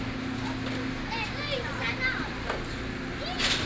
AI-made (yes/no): no